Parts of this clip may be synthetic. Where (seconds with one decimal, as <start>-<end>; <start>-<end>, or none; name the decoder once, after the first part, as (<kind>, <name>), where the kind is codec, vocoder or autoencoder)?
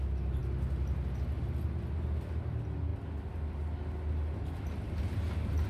none